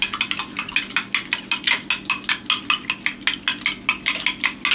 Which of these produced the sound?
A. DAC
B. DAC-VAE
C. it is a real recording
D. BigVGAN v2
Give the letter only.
C